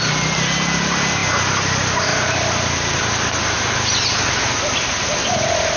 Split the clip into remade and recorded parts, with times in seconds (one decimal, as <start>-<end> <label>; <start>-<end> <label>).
0.0-5.8 recorded